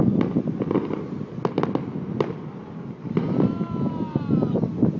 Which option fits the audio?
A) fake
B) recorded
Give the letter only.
B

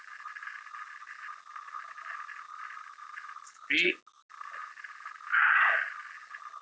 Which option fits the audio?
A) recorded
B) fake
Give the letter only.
A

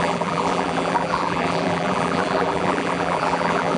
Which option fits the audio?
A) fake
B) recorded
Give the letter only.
A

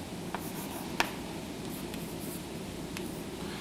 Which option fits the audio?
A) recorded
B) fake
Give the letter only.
A